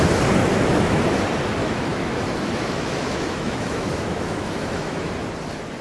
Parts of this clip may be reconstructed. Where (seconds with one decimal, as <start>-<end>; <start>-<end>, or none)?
0.4-1.0; 1.6-5.1